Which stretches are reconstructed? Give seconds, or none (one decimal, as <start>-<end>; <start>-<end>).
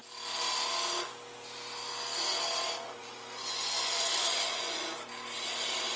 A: 3.0-4.8